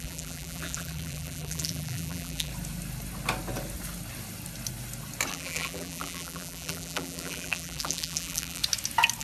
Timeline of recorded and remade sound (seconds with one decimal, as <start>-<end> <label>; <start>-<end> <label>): 0.0-2.5 remade; 2.5-5.3 recorded; 5.3-8.6 remade; 8.6-9.2 recorded

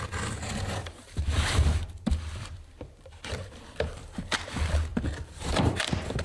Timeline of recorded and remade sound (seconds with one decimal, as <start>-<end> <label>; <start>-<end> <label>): 0.0-0.8 recorded; 0.8-2.8 remade; 2.8-4.9 recorded; 4.9-6.2 remade

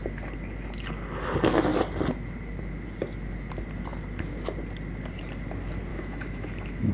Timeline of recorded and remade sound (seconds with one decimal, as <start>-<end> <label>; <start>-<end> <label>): 0.0-5.9 recorded; 5.9-6.9 remade

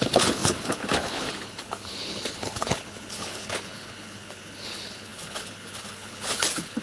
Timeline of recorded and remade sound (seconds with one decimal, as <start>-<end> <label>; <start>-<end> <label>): 0.0-6.8 remade